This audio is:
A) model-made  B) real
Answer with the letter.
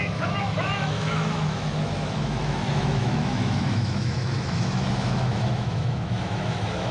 A